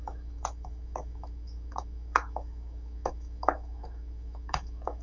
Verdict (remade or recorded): remade